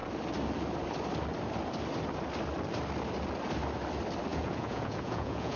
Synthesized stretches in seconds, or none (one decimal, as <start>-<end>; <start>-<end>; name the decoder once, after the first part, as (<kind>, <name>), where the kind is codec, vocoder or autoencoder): 4.3-5.6 (vocoder, Vocos)